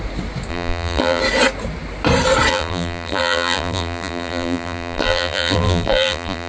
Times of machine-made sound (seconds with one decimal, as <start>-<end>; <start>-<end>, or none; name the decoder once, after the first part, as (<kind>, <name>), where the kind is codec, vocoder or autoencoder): 0.5-1.2 (vocoder, BigVGAN v2); 2.5-6.5